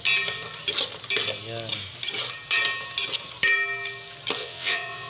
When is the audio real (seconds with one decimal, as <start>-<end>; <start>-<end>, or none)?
0.0-4.4